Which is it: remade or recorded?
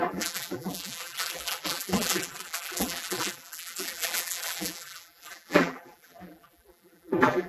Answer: remade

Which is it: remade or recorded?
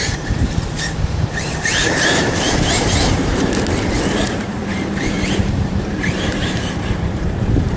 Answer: remade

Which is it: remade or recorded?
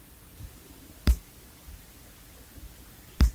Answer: recorded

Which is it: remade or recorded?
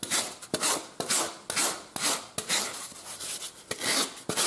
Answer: recorded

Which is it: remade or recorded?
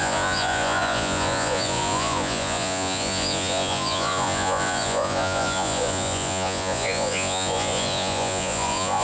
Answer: remade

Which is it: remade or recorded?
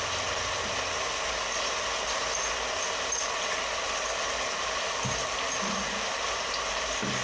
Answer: recorded